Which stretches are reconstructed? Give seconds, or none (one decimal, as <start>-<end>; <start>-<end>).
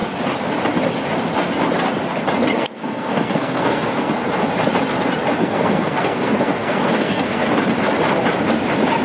2.5-4.1; 5.4-7.5